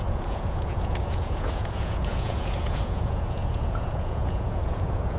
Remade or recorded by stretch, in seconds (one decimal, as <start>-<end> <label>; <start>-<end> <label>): 0.0-5.2 remade